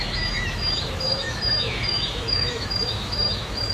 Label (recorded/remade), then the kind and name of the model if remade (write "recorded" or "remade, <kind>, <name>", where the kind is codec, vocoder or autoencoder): remade, autoencoder, DAC-VAE